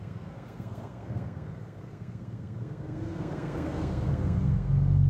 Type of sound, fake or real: fake